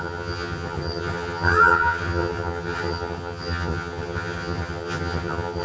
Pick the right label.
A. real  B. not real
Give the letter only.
B